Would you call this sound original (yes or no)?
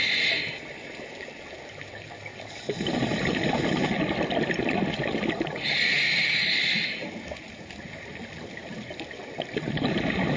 yes